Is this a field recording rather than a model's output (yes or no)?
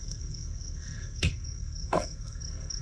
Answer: no